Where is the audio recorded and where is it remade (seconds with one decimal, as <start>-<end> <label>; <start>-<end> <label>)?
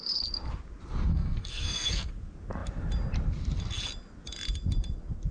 0.0-1.1 recorded; 1.1-2.1 remade; 2.1-5.3 recorded